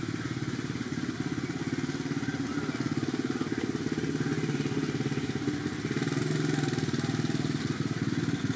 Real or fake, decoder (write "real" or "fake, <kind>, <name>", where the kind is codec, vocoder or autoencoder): real